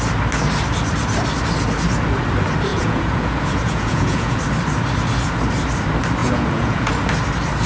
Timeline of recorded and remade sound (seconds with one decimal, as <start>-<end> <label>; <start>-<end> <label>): 0.0-2.7 recorded; 2.7-4.4 remade; 4.4-6.2 recorded; 6.2-6.9 remade; 6.9-7.7 recorded